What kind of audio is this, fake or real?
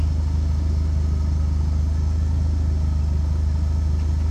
real